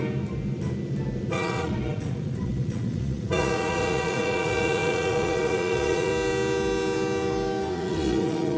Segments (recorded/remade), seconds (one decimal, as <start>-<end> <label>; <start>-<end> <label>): 0.0-1.3 recorded; 1.3-6.1 remade; 6.1-7.7 recorded; 7.7-8.6 remade